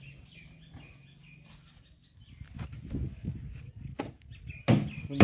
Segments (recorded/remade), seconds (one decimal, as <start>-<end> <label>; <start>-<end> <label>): 0.0-5.2 recorded